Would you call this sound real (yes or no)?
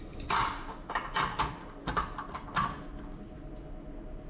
yes